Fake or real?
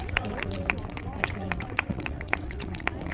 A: fake